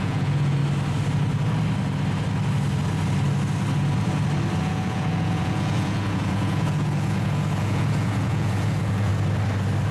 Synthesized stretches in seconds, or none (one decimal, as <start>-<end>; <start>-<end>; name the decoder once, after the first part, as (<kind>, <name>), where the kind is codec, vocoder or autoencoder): 0.0-0.6 (vocoder, Vocos); 4.6-9.1